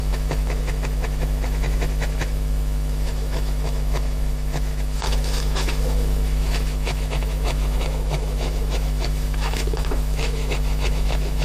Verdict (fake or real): fake